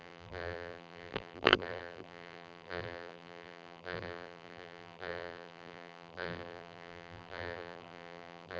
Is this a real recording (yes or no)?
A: no